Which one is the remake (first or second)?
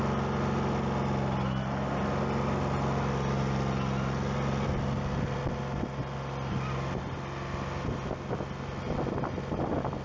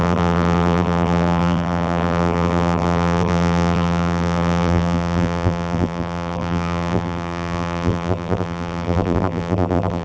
second